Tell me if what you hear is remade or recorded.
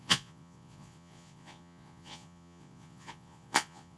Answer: remade